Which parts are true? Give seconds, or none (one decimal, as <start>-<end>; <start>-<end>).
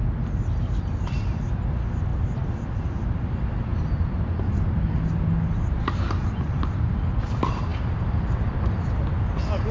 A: 0.0-9.7